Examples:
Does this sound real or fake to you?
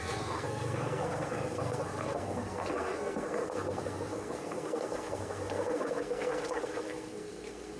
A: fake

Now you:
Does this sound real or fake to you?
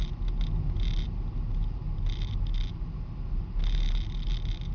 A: real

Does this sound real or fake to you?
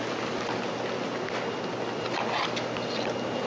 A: real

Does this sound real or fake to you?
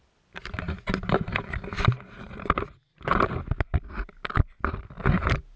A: real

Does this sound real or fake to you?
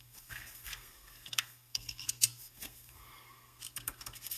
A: fake